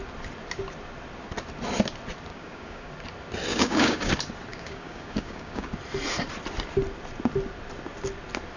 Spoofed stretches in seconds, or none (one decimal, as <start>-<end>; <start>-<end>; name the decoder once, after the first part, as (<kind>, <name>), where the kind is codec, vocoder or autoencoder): 2.3-2.9 (codec, DAC); 3.5-4.1; 4.5-5.7